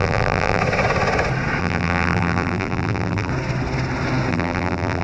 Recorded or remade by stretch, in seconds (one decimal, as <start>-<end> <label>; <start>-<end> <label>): 0.0-0.6 remade; 0.6-1.6 recorded; 1.6-3.3 remade; 3.3-4.3 recorded; 4.3-5.0 remade